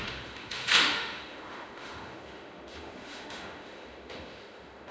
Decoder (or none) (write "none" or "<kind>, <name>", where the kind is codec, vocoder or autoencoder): autoencoder, DAC-VAE